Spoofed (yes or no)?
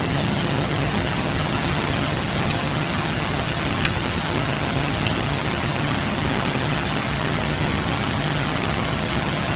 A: yes